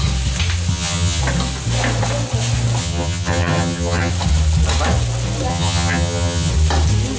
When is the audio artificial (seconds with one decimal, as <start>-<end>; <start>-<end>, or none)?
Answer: 0.7-1.2; 2.8-4.1; 5.5-6.5